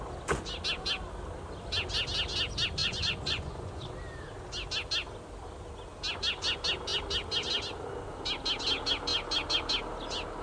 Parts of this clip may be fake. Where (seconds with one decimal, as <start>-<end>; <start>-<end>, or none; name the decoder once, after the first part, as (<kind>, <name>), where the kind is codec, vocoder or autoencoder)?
2.8-3.8 (vocoder, Vocos)